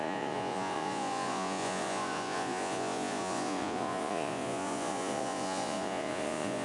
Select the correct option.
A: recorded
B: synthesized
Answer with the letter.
B